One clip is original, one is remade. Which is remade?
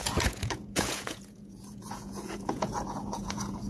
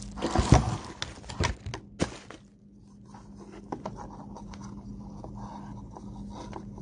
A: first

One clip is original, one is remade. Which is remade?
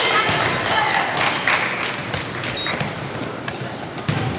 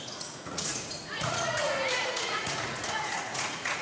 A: second